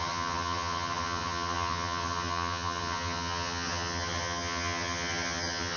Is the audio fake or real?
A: fake